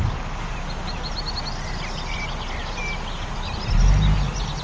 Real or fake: real